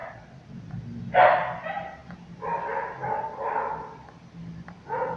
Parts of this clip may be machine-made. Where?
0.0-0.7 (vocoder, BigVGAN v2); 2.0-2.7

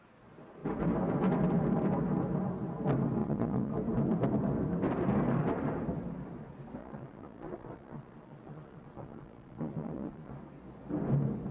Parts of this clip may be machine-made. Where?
3.2-3.7 (vocoder, Vocos); 6.8-10.3

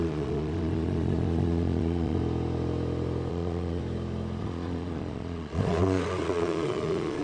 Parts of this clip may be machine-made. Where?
0.0-2.2 (vocoder, Vocos); 3.3-3.8; 4.4-7.2

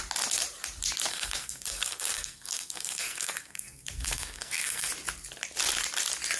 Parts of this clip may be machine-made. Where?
1.1-4.9 (codec, SNAC)

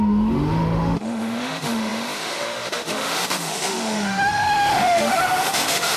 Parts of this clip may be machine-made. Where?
0.0-6.0 (autoencoder, DAC-VAE)

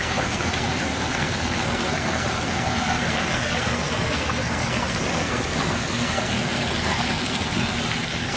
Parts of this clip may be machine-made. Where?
0.0-8.4 (codec, SNAC)